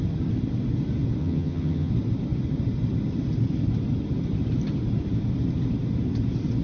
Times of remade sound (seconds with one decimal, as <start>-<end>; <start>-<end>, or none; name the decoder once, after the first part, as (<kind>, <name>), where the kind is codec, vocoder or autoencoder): 1.2-1.9 (vocoder, HiFi-GAN)